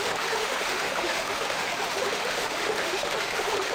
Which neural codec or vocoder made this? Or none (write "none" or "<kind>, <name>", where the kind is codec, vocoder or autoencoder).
autoencoder, DAC-VAE